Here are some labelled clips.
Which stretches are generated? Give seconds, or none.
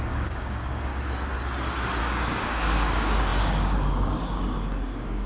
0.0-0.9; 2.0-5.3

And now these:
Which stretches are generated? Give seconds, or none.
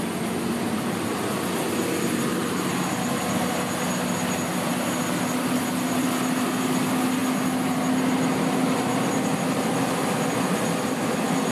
none